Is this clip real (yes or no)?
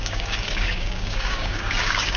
no